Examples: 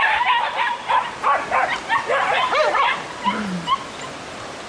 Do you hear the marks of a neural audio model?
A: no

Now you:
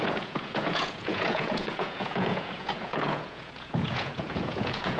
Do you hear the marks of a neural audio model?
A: yes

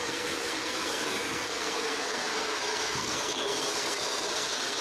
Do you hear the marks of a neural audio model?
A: yes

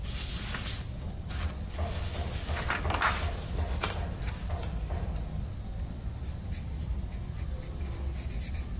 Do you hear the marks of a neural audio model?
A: no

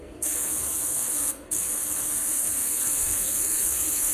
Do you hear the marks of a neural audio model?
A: yes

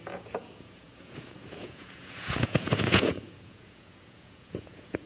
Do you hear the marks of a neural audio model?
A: yes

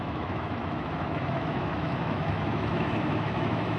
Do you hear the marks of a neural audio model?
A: yes